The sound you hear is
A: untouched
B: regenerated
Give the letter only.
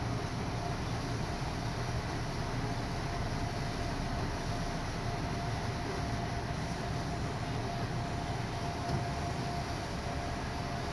A